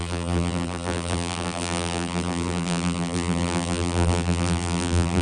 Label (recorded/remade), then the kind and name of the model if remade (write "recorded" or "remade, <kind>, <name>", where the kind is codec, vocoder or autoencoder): remade, vocoder, BigVGAN v2